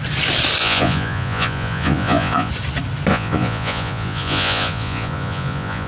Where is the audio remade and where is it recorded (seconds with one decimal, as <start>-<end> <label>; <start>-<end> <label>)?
0.0-0.6 recorded; 0.6-2.5 remade; 2.5-3.1 recorded; 3.1-5.9 remade